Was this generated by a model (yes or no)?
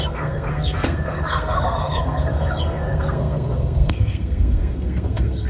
yes